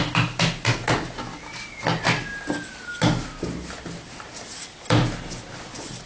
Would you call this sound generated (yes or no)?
no